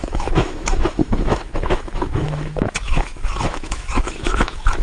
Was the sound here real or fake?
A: fake